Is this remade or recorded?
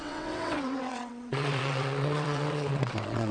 remade